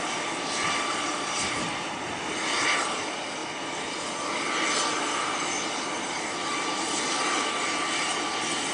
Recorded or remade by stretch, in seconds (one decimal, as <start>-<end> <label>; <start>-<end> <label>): 0.0-8.7 recorded